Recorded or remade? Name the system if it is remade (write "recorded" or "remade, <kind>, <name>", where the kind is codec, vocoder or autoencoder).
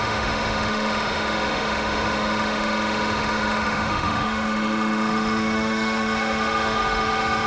remade, autoencoder, DAC-VAE